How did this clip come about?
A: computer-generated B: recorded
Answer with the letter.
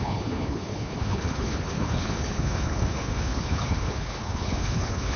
A